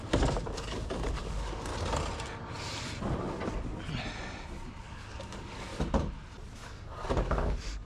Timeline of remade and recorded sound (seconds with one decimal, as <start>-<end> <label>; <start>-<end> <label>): 0.0-1.7 remade; 1.7-4.8 recorded; 4.8-5.7 remade; 5.7-6.6 recorded; 6.6-7.9 remade